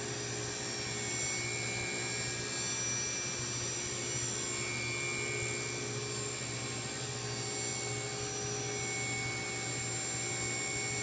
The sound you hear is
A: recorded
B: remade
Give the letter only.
A